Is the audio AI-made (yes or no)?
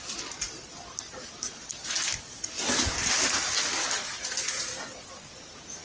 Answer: no